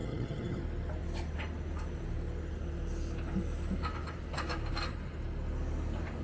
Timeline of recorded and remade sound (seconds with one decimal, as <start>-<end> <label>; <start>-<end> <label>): 0.0-0.6 remade; 0.6-6.2 recorded